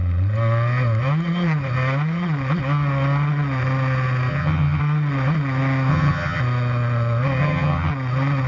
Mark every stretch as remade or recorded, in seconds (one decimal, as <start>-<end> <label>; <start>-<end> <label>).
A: 0.0-4.3 recorded; 4.3-4.8 remade; 4.8-5.9 recorded; 5.9-6.4 remade; 6.4-7.4 recorded; 7.4-7.9 remade; 7.9-8.5 recorded